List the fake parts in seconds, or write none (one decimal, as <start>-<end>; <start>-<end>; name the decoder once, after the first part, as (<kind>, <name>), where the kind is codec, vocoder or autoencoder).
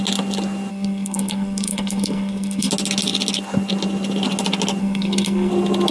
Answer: 0.7-2.7 (codec, SNAC); 4.8-5.5